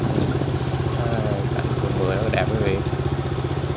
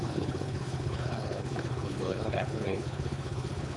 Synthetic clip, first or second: second